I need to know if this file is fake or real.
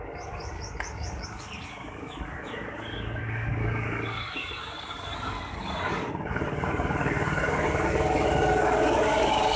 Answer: fake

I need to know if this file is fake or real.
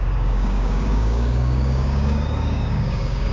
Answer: fake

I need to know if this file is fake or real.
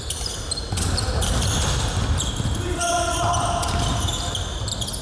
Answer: real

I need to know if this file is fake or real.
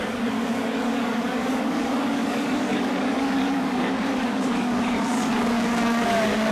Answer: fake